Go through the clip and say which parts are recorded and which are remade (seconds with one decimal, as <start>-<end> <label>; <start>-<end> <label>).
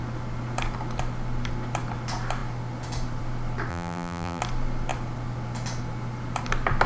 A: 0.0-3.7 recorded; 3.7-4.4 remade; 4.4-6.9 recorded